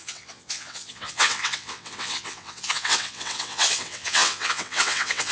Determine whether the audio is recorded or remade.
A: remade